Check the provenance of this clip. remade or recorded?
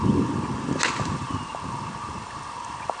recorded